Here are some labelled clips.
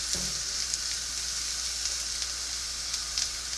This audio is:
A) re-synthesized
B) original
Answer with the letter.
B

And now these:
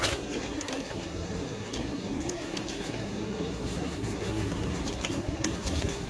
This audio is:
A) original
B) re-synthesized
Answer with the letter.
B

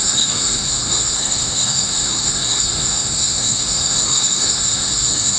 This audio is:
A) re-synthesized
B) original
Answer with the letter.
A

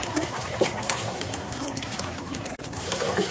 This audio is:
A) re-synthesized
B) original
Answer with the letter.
A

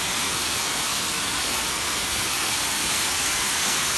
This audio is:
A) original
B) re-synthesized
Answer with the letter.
B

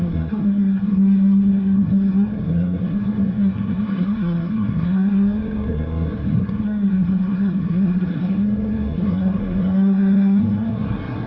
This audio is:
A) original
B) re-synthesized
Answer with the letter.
B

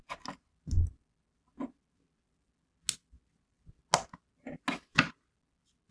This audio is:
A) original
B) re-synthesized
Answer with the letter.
A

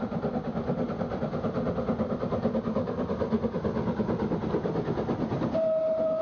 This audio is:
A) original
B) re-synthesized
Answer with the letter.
A